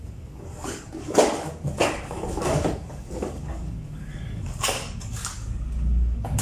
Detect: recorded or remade remade